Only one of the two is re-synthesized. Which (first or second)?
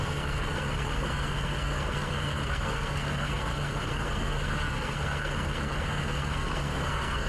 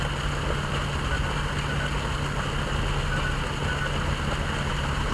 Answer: first